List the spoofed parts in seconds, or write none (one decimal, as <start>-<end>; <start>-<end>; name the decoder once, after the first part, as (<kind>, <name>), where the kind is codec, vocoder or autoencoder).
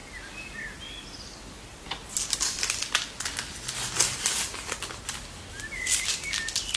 none